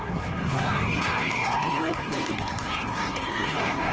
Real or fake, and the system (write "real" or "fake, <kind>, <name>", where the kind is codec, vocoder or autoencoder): fake, codec, SNAC